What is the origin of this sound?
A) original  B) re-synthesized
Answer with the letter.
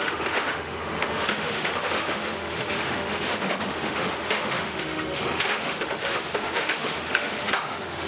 B